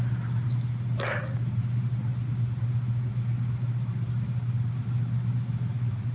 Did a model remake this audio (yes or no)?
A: no